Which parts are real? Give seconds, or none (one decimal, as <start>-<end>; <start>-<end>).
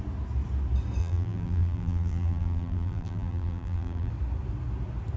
0.0-1.0; 4.1-5.2